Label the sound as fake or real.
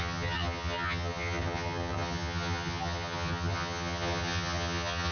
fake